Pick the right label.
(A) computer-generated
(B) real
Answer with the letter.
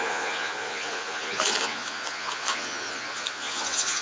A